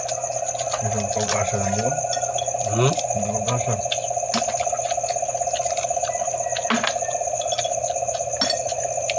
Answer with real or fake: real